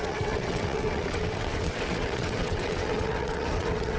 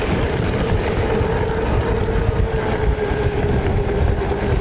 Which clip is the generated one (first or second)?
first